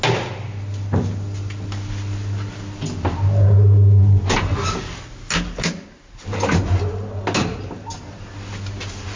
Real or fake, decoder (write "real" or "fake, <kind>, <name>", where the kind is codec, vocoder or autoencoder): real